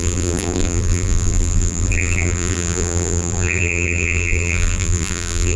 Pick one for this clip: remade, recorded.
remade